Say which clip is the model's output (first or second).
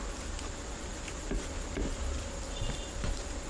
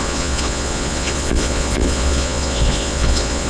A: second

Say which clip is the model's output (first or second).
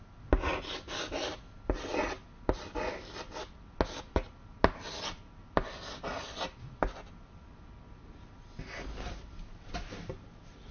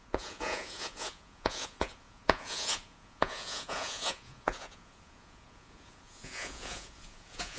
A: second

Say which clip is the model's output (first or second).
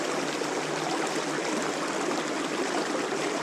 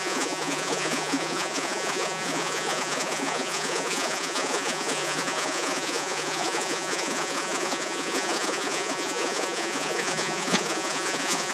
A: second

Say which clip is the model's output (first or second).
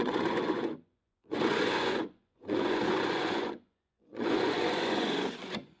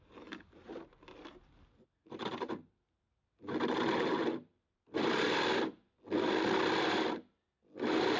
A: first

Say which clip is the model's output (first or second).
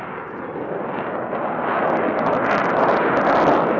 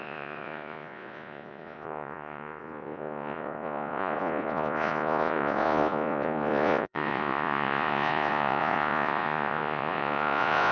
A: second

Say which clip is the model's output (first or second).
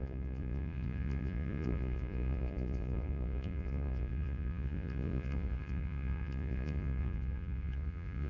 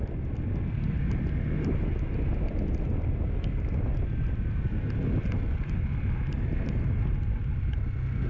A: first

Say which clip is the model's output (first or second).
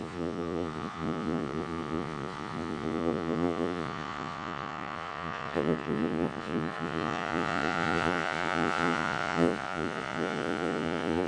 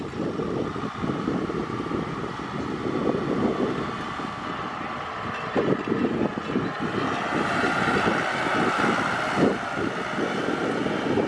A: first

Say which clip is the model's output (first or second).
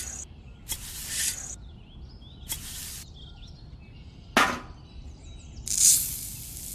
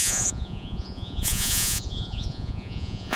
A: second